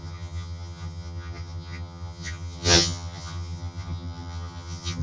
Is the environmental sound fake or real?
fake